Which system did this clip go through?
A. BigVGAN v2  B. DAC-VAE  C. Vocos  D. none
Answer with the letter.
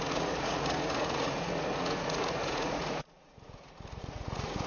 C